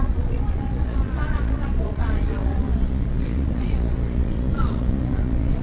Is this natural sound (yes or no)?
no